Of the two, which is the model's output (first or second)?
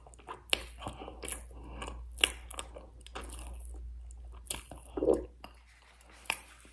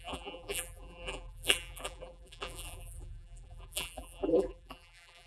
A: second